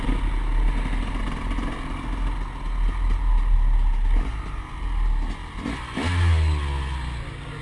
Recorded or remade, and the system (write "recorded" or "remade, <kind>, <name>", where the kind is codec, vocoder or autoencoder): recorded